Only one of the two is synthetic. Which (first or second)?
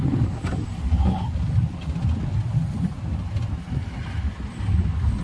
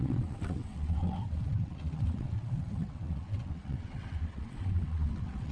second